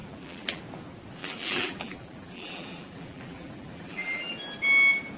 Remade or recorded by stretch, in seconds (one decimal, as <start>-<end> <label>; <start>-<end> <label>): 0.0-0.6 remade; 0.6-1.2 recorded; 1.2-4.3 remade; 4.3-5.2 recorded